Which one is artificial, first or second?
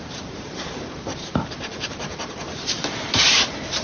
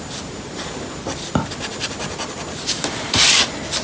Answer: first